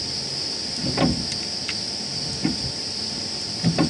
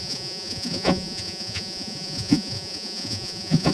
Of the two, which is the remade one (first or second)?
second